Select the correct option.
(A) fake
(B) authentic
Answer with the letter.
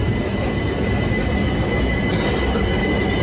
B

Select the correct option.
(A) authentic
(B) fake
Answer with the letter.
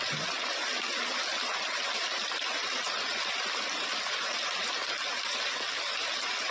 A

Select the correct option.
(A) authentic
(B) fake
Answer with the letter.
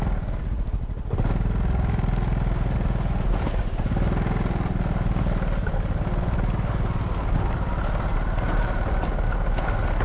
A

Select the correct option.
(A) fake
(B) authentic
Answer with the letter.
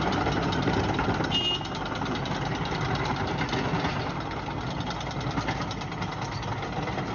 B